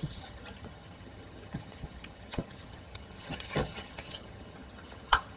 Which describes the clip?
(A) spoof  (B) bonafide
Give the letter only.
A